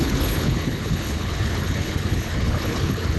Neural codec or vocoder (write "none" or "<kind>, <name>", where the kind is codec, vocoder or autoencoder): codec, HILCodec